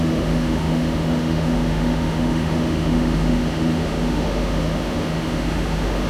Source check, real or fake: fake